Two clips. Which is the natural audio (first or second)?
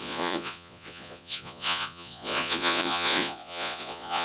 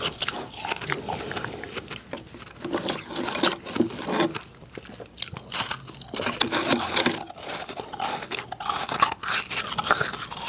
second